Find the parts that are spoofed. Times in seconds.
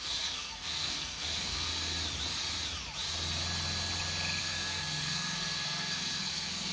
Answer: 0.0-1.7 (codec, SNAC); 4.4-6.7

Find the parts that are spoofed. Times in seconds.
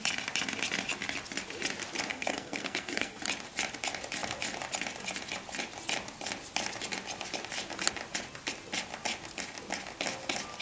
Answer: 2.1-3.2 (codec, SNAC)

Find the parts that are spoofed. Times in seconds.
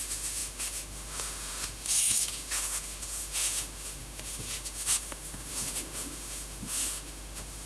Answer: 0.0-7.7 (autoencoder, DAC-VAE)